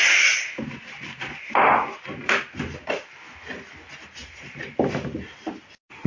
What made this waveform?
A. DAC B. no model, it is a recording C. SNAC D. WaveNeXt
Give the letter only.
B